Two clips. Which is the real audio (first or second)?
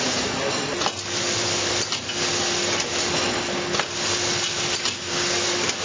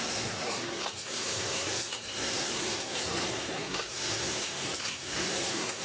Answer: first